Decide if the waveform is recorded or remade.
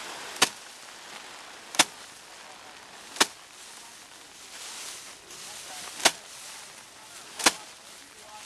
recorded